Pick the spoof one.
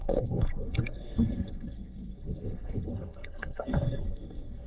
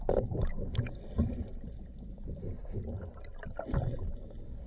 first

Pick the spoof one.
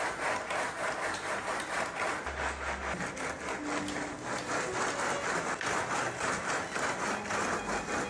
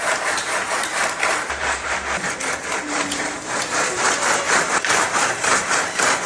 second